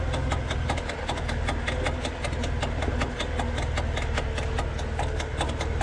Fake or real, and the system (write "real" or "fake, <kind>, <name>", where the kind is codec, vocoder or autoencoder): real